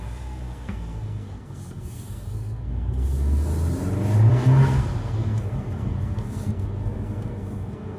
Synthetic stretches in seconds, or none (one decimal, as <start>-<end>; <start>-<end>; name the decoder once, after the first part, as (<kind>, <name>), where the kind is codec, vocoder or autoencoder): 0.0-3.5 (codec, SNAC); 4.3-8.0

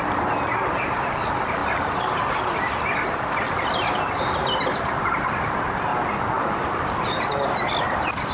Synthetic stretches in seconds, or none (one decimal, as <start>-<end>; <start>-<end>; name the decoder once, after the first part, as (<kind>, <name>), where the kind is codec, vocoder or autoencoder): none

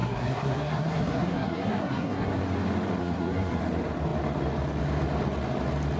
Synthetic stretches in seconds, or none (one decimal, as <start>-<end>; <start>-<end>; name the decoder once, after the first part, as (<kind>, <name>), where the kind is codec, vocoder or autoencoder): 0.0-2.4 (codec, SNAC); 3.0-3.6

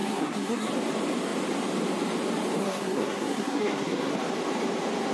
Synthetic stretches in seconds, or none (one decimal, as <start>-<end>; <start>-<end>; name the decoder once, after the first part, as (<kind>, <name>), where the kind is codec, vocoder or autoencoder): 0.0-0.7 (codec, SNAC); 2.6-4.1

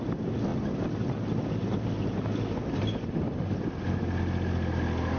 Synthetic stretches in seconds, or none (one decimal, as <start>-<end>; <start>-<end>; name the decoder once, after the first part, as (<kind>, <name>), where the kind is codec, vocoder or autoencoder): none